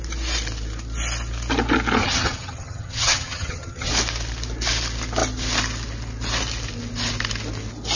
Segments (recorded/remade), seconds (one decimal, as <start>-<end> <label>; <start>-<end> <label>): 0.0-2.0 recorded; 2.0-3.9 remade; 3.9-8.0 recorded